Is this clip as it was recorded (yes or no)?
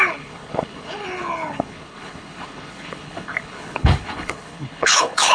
no